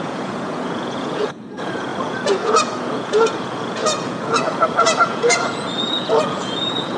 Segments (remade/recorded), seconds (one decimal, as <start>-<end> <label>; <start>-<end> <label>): 0.0-7.0 remade